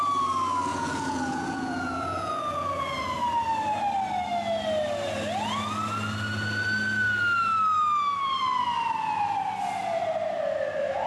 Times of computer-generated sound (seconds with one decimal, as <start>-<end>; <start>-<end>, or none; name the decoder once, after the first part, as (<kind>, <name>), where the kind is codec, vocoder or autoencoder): 0.7-3.2 (vocoder, Vocos)

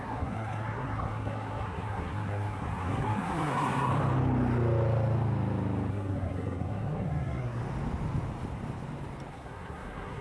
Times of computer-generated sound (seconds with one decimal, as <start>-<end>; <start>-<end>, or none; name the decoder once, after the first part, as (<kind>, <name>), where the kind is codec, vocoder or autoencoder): 0.0-3.9 (codec, SNAC); 5.9-7.6; 9.3-10.2

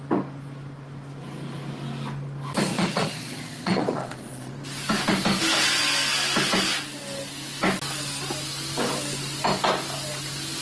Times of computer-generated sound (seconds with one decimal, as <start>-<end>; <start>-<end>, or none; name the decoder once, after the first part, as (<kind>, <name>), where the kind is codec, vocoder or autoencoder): 2.7-4.5 (vocoder, Vocos)

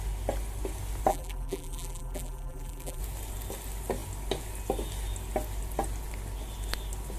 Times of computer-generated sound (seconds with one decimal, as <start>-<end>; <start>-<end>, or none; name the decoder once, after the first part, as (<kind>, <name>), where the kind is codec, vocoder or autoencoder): 1.1-3.0 (vocoder, BigVGAN v2)

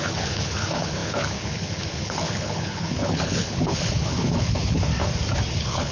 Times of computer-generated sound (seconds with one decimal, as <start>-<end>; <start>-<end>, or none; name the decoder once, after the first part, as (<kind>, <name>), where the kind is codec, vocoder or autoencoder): 0.0-4.9 (codec, HILCodec); 5.5-5.9

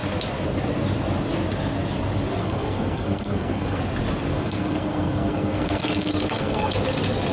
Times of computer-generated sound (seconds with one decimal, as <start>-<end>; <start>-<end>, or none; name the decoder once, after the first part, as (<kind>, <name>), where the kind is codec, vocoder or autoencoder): 2.4-3.8 (codec, SNAC); 4.3-6.7